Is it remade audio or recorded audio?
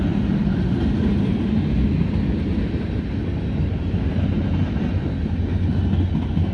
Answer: recorded